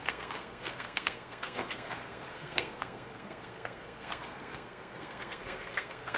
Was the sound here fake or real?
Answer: fake